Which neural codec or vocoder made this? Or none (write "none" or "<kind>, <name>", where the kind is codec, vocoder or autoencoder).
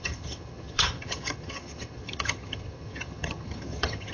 vocoder, HiFi-GAN